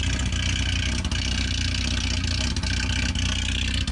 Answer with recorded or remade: recorded